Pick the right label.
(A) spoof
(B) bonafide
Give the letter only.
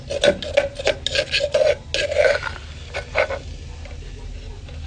B